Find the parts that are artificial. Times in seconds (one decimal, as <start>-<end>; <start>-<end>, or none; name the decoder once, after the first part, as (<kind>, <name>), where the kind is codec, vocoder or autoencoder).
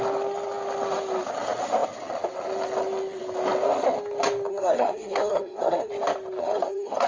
4.5-5.9 (codec, SNAC); 6.4-7.1